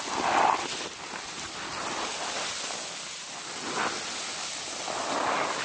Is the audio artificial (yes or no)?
no